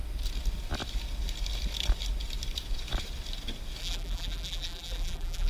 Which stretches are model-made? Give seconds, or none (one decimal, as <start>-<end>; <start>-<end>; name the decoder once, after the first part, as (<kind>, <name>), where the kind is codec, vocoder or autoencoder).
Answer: 3.8-5.5 (vocoder, BigVGAN v2)